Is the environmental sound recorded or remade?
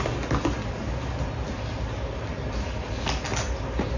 recorded